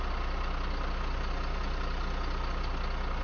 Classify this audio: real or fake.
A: real